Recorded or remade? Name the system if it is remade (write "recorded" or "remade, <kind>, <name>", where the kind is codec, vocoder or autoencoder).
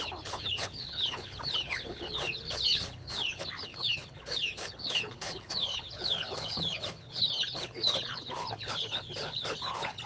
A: remade, codec, HILCodec